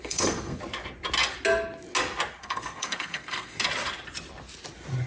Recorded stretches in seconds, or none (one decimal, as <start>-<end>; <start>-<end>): 0.6-2.4; 3.6-5.1